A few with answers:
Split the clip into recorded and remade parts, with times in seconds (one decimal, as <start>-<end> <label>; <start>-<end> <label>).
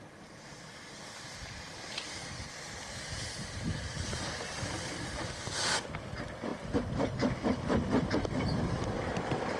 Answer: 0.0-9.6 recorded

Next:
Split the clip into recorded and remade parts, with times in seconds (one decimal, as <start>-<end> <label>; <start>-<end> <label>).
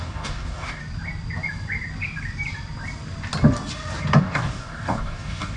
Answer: 0.0-0.8 remade; 0.8-4.2 recorded; 4.2-5.6 remade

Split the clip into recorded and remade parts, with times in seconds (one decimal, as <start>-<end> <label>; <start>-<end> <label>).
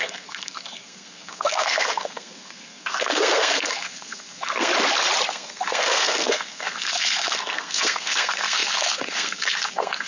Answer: 0.0-4.7 remade; 4.7-5.3 recorded; 5.3-10.1 remade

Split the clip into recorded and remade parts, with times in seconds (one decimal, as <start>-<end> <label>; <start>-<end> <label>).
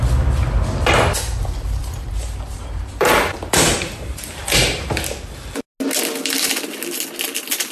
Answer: 0.0-1.8 recorded; 1.8-4.4 remade; 4.4-7.7 recorded